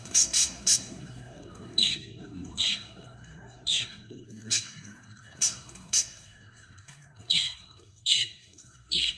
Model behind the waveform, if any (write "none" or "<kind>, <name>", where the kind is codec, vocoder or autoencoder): codec, SNAC